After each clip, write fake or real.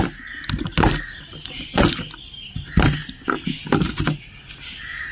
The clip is real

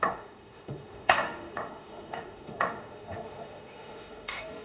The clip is fake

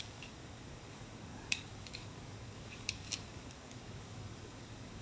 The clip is fake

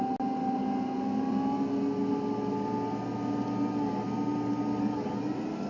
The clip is real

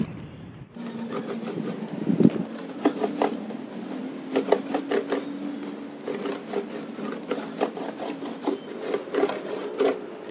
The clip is real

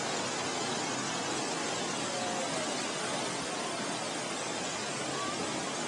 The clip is real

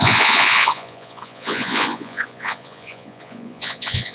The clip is fake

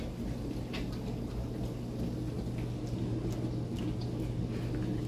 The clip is real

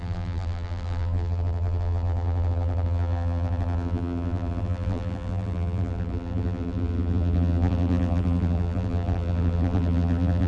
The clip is fake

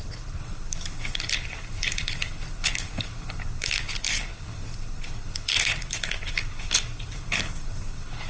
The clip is fake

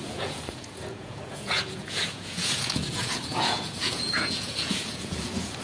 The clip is fake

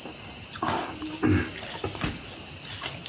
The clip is real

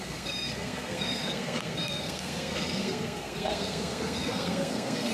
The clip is fake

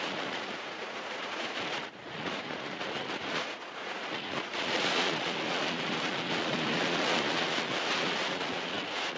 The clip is fake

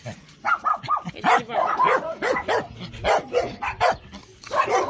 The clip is real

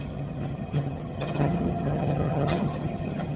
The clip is fake